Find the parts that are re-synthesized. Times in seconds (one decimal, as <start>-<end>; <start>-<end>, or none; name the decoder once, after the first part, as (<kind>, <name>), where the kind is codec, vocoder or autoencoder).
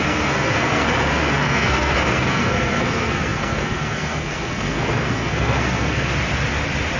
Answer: 0.0-6.1 (codec, SNAC)